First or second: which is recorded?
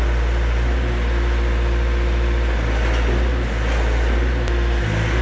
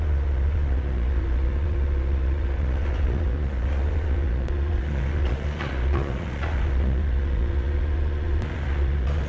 first